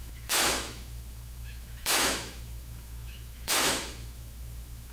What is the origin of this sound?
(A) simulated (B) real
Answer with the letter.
A